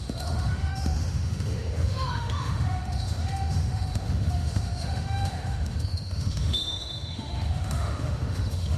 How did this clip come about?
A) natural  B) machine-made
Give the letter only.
B